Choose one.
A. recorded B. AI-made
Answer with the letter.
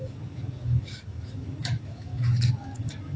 B